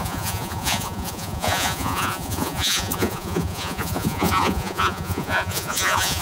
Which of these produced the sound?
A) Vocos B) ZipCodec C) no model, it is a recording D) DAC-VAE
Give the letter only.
A